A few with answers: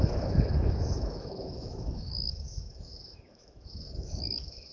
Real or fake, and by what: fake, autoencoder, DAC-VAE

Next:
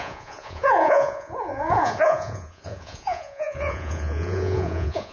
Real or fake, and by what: fake, vocoder, Vocos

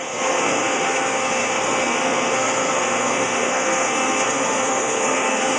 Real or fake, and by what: fake, codec, SNAC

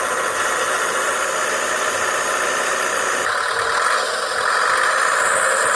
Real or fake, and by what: real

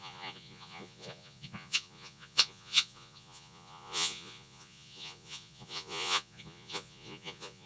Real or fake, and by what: fake, vocoder, Vocos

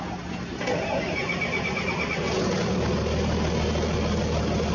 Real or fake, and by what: real